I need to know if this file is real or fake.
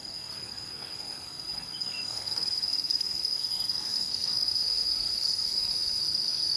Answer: fake